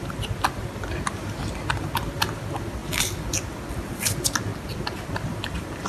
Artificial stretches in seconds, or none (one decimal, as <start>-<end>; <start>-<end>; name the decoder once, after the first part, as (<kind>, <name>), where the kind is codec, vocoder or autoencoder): none